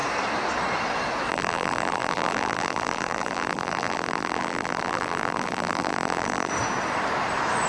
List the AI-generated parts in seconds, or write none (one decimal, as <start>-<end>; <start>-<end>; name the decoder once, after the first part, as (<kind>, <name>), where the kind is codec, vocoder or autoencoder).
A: 1.3-6.5 (vocoder, BigVGAN v2)